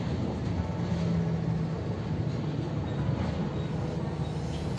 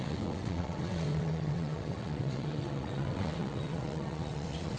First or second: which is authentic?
first